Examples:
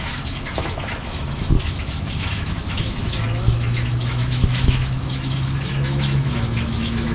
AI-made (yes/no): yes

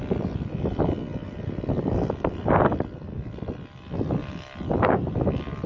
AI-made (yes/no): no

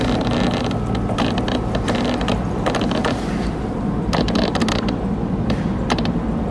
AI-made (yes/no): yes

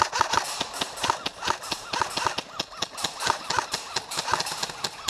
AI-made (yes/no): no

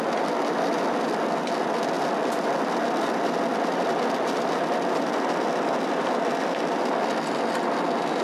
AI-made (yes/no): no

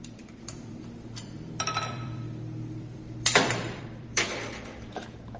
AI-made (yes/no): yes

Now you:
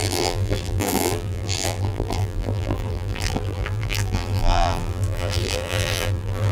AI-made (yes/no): yes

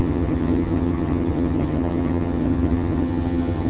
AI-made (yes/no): yes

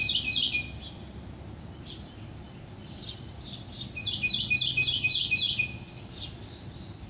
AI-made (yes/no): no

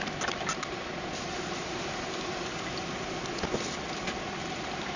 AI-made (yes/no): no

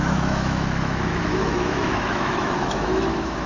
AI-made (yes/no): yes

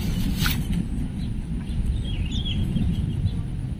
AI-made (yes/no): no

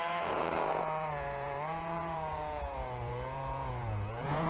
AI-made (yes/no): yes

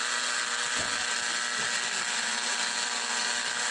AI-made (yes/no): no